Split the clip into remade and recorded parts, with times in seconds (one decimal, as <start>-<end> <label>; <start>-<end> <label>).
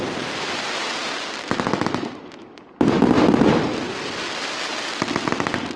0.0-5.8 recorded